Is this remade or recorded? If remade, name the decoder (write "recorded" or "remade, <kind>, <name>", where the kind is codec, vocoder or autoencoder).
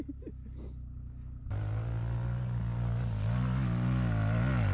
recorded